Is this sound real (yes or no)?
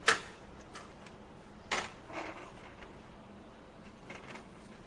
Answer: yes